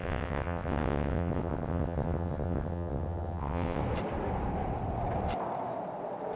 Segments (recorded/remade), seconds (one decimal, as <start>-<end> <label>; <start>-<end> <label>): 0.0-3.8 remade; 3.8-6.4 recorded